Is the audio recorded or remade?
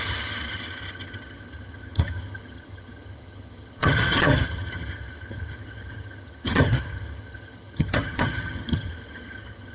remade